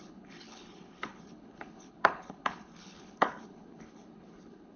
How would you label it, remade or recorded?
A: remade